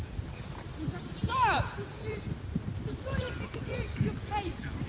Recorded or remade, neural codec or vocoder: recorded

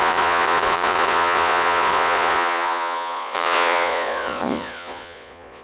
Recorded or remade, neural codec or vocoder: remade, vocoder, Vocos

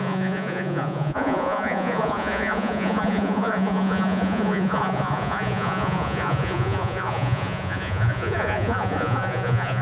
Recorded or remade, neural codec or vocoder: remade, vocoder, Vocos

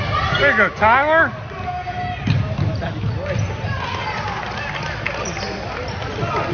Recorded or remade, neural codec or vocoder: recorded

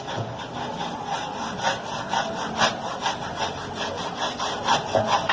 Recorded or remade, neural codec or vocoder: recorded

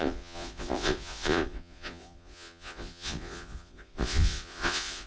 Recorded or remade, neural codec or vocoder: remade, vocoder, Vocos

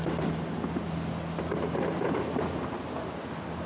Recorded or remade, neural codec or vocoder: recorded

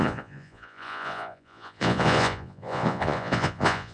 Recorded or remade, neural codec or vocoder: remade, vocoder, Vocos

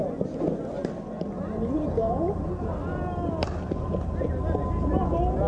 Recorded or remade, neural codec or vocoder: recorded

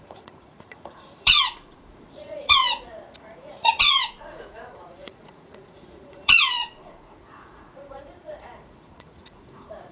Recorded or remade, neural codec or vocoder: remade, vocoder, Vocos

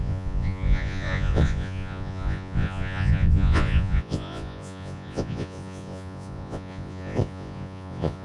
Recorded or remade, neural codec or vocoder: remade, vocoder, Vocos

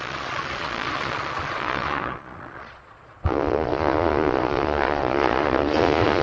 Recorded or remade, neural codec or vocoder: remade, vocoder, Vocos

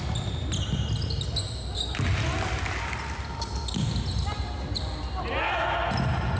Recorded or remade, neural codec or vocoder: recorded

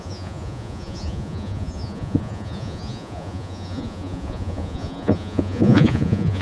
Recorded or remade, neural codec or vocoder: remade, vocoder, Vocos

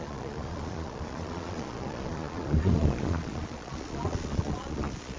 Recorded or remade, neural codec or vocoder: remade, vocoder, Vocos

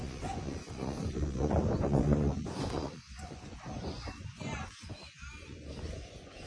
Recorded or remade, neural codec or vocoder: remade, vocoder, Vocos